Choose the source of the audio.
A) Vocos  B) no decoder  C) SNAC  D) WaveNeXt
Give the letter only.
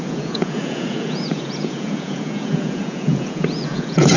A